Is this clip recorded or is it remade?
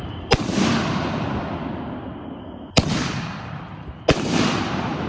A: recorded